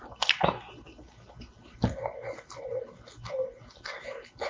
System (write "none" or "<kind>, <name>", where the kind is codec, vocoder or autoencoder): none